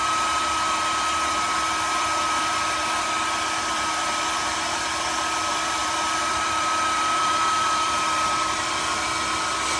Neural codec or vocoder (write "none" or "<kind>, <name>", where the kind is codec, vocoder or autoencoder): vocoder, BigVGAN v2